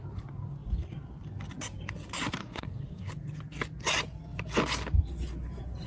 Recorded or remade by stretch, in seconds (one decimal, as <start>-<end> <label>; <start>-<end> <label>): 0.0-2.4 recorded; 2.4-3.1 remade; 3.1-5.9 recorded